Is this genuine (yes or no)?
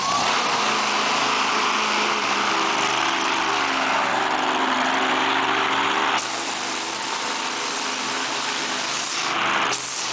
yes